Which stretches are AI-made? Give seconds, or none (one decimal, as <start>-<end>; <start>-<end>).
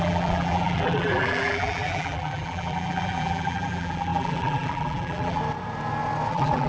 0.0-5.4; 6.3-6.7